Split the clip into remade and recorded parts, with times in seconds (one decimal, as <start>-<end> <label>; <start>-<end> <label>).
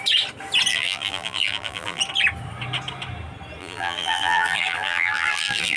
0.0-0.7 recorded; 0.7-2.0 remade; 2.0-3.6 recorded; 3.6-5.8 remade